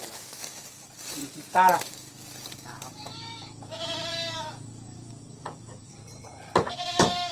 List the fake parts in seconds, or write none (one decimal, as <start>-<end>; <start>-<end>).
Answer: 0.0-1.2; 1.7-6.0; 6.7-7.3